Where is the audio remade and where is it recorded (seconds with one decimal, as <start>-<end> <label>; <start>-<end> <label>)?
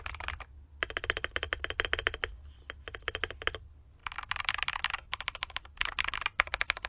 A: 0.0-6.9 recorded